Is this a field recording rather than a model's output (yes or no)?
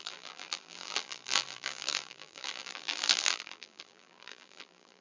no